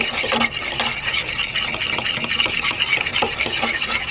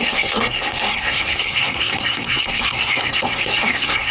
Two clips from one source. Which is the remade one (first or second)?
second